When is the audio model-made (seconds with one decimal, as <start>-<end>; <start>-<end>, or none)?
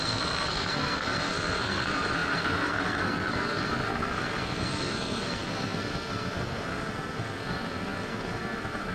0.0-8.9